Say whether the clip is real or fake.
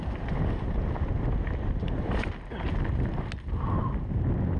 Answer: real